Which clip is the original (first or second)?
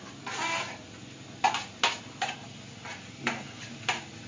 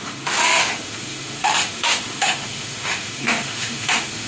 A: first